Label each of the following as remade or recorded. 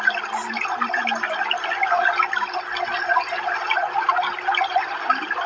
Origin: recorded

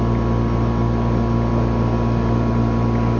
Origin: recorded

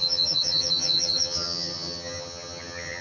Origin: remade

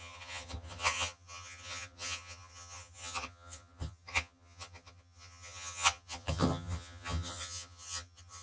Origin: remade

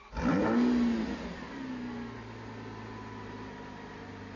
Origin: recorded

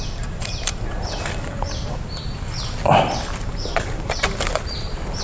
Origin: recorded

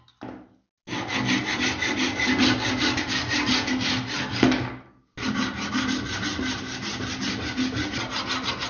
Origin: recorded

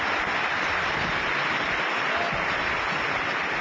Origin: recorded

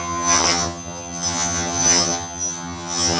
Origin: remade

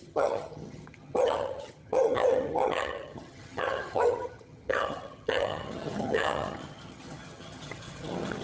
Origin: remade